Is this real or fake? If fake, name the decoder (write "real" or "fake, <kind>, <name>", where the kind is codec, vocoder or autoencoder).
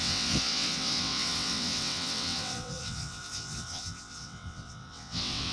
fake, vocoder, WaveNeXt